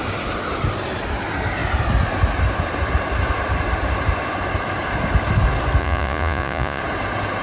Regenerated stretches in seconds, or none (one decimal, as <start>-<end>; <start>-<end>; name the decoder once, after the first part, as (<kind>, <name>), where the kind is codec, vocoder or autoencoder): 5.8-6.8 (vocoder, Vocos)

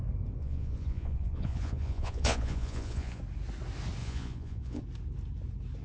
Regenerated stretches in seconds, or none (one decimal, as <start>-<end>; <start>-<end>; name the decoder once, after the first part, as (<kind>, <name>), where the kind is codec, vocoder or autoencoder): 0.4-3.2 (vocoder, Vocos); 4.0-4.8

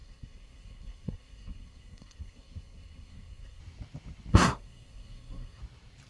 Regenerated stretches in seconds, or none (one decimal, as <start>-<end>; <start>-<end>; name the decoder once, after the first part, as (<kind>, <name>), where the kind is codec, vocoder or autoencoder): 0.0-3.6 (codec, SNAC); 4.3-5.6

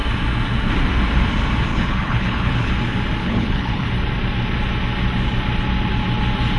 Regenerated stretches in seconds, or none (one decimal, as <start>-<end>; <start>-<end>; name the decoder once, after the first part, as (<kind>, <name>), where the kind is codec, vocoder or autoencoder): 1.7-2.7 (codec, HILCodec); 3.2-3.9

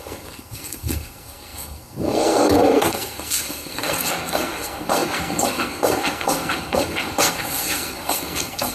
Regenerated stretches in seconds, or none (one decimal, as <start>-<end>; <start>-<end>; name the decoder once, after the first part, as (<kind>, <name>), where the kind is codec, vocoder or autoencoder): 0.0-8.7 (codec, SNAC)

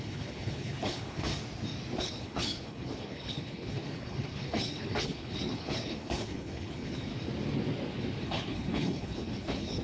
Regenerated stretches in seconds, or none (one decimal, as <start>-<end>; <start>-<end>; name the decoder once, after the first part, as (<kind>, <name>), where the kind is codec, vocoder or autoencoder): 0.0-1.3 (codec, HILCodec); 2.0-7.1; 8.2-9.8

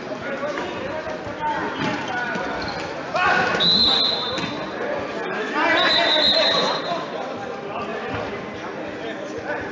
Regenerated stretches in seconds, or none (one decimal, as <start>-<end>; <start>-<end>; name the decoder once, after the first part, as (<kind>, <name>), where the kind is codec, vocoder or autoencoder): none